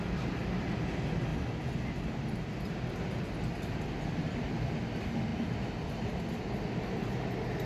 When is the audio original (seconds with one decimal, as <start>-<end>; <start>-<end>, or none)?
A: 0.0-7.7